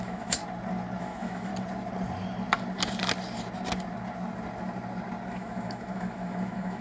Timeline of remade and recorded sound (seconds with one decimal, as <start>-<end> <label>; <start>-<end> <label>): 0.0-0.4 remade; 0.4-1.0 recorded; 1.0-1.5 remade; 1.5-5.3 recorded; 5.3-6.8 remade